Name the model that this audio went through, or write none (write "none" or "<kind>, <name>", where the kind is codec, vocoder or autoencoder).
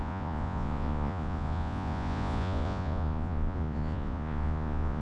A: vocoder, Vocos